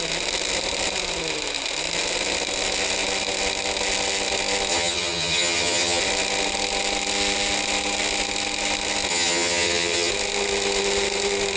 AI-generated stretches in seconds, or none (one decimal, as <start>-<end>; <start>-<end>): 4.7-6.0; 9.1-10.1